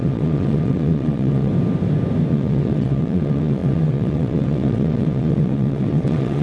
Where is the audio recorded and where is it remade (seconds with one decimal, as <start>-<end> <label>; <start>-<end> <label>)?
0.0-1.5 remade; 1.5-2.3 recorded; 2.3-6.4 remade